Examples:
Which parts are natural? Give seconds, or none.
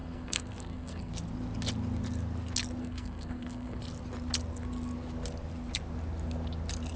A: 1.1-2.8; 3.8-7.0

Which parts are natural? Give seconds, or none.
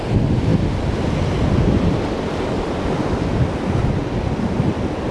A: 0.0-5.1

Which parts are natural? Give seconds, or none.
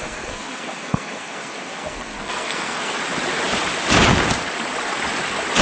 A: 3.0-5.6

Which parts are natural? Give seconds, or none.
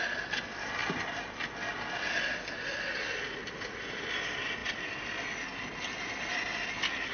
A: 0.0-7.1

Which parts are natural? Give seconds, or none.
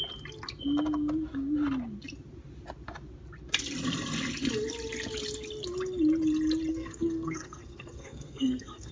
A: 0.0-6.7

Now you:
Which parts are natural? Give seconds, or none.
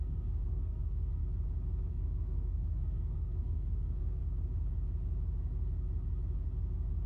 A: 1.2-1.9; 4.2-7.1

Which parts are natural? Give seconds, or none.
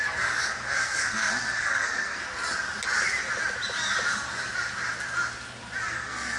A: 2.2-5.9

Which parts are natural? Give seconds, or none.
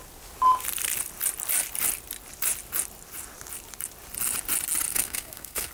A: 0.0-4.9